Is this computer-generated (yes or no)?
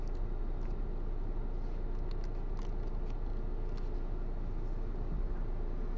no